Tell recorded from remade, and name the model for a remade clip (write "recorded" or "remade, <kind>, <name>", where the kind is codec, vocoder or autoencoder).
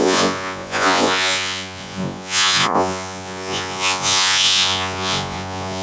remade, vocoder, Vocos